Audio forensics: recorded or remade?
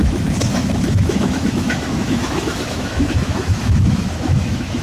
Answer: remade